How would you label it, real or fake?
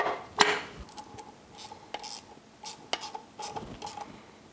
real